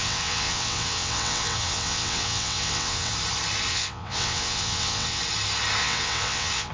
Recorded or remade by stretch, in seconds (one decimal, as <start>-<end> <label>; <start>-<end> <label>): 0.0-3.1 remade; 3.1-3.7 recorded; 3.7-5.2 remade; 5.2-5.8 recorded; 5.8-6.7 remade